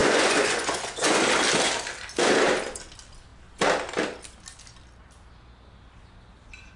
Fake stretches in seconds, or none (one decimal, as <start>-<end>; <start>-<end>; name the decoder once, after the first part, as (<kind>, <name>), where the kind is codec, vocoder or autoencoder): 0.0-1.2 (vocoder, Vocos)